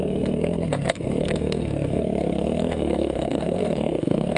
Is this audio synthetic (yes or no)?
yes